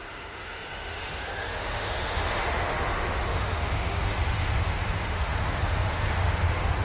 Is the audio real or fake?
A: fake